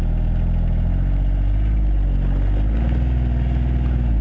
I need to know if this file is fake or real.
real